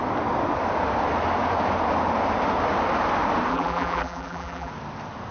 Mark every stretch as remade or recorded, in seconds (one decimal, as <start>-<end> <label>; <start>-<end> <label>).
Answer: 0.0-3.5 recorded; 3.5-4.7 remade; 4.7-5.3 recorded